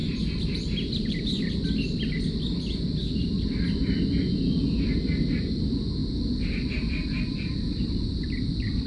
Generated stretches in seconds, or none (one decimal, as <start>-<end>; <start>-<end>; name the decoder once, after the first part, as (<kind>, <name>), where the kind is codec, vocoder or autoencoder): none